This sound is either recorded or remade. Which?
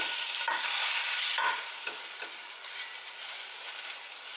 recorded